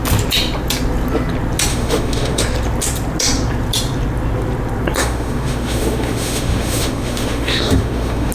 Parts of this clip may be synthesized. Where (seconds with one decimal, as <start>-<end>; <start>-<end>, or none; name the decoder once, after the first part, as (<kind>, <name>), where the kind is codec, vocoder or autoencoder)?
1.7-2.4 (autoencoder, DAC-VAE); 5.0-8.3